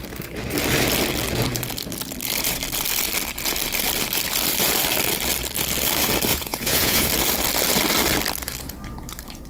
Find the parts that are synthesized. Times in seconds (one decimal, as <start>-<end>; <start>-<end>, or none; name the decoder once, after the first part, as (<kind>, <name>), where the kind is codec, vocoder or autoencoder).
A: 6.3-7.1 (vocoder, Vocos)